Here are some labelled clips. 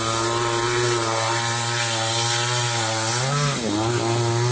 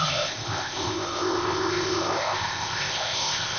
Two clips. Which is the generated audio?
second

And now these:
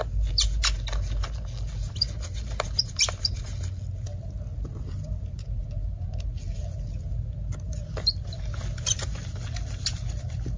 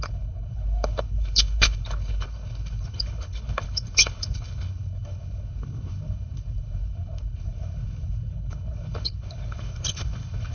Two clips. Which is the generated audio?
second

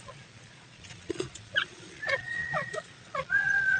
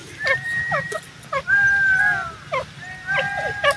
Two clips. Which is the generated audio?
first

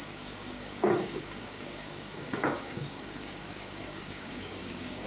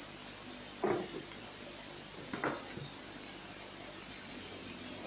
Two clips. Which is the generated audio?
first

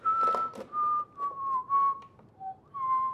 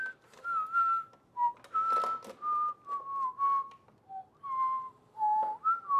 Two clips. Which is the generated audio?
first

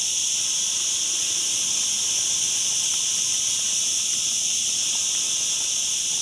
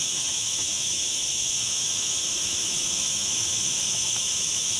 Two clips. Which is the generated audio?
second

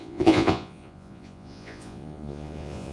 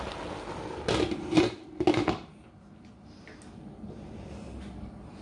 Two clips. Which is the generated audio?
first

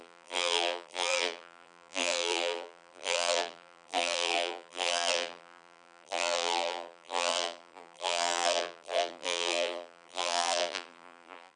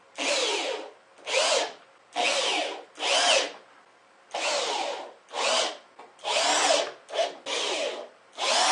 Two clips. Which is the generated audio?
first